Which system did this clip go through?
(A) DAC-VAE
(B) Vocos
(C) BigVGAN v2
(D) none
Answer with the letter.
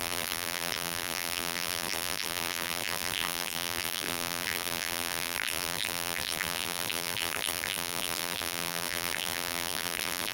C